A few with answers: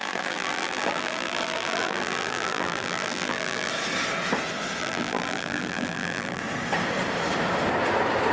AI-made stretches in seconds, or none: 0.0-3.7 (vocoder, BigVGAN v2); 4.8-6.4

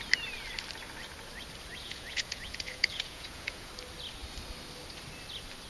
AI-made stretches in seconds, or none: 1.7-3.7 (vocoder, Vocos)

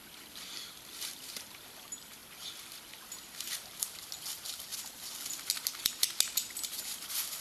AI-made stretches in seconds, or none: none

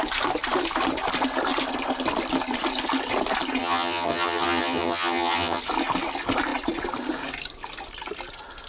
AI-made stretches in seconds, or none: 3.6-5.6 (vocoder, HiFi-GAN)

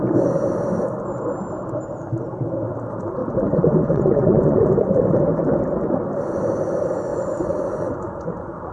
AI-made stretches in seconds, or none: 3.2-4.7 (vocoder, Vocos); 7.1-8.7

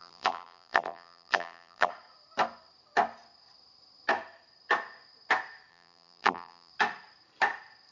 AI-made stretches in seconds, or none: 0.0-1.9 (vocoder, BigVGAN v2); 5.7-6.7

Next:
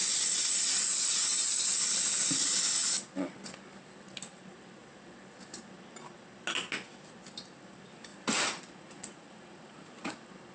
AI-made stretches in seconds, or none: 8.1-10.1 (vocoder, Vocos)